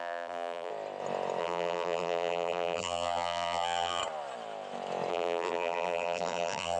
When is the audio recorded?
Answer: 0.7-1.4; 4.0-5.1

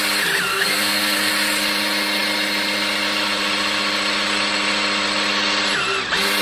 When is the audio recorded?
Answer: 0.0-0.5; 1.3-6.4